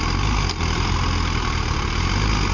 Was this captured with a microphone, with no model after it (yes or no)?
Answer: yes